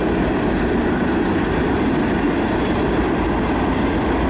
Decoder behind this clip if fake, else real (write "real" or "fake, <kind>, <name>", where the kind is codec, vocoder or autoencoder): real